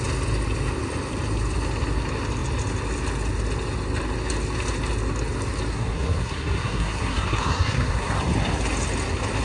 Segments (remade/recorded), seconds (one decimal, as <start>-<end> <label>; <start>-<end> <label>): 0.0-5.7 recorded; 5.7-8.1 remade; 8.1-9.4 recorded